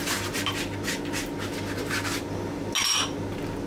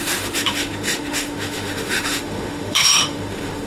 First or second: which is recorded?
first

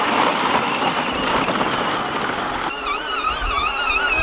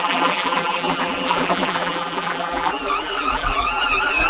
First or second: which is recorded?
first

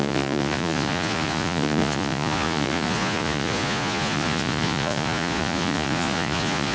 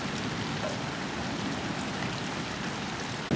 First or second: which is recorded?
second